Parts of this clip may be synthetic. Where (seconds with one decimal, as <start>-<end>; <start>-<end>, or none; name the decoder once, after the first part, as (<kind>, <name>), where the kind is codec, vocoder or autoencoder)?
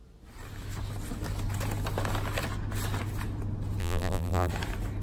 3.8-4.5 (vocoder, BigVGAN v2)